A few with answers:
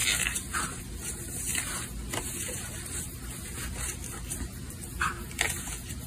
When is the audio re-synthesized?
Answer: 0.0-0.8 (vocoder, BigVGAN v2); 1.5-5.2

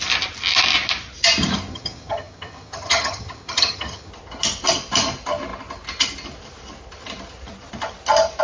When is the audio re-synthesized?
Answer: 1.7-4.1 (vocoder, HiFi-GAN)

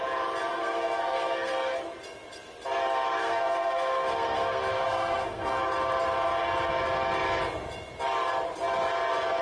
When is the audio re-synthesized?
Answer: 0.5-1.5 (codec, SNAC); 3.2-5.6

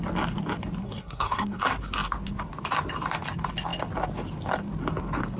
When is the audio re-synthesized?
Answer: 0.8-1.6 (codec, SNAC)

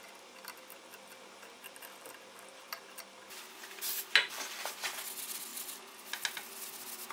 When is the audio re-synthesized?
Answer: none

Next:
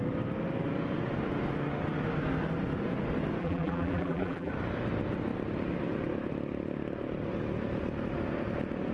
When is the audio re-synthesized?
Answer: 3.4-4.5 (vocoder, BigVGAN v2)